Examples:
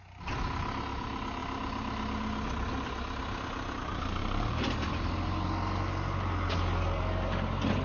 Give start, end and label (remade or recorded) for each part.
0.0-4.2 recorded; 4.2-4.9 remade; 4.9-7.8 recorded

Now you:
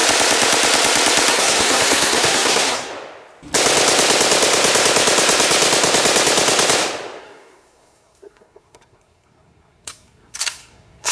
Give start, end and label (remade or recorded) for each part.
0.0-1.3 recorded; 1.3-2.9 remade; 2.9-7.2 recorded; 7.2-11.1 remade

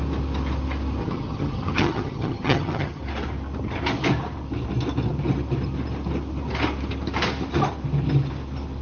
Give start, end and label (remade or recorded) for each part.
0.0-1.0 recorded; 1.0-3.0 remade; 3.0-8.8 recorded

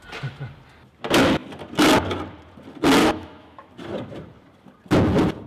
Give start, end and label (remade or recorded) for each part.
0.0-3.0 recorded; 3.0-3.7 remade; 3.7-5.5 recorded

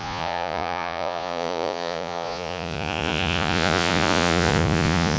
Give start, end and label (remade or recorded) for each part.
0.0-5.2 remade